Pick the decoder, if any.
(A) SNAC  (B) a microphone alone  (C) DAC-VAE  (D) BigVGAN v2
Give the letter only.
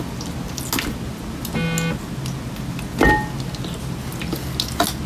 B